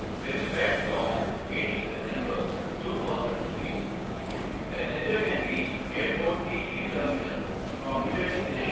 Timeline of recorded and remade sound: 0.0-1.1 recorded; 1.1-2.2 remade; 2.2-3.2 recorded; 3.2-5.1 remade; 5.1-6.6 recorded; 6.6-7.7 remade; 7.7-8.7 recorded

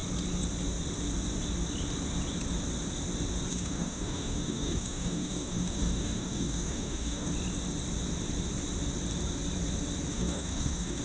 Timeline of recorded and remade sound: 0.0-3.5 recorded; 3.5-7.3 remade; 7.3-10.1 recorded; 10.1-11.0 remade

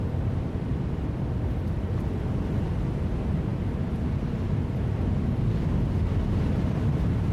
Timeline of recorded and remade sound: 0.0-7.3 recorded

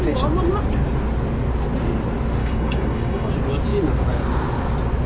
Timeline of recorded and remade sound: 0.0-2.4 recorded; 2.4-3.3 remade; 3.3-5.1 recorded

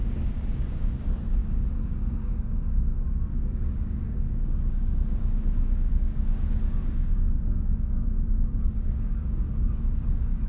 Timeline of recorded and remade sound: 0.0-10.5 remade

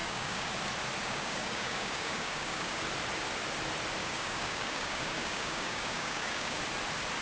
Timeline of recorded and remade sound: 0.0-0.5 remade; 0.5-1.0 recorded; 1.0-2.8 remade; 2.8-4.0 recorded; 4.0-6.6 remade; 6.6-7.2 recorded